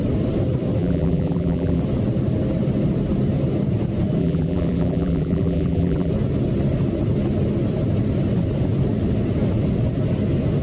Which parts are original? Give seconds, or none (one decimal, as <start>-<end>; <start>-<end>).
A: 0.0-0.8; 1.8-4.2; 6.1-10.6